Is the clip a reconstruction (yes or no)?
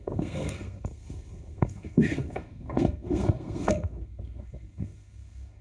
yes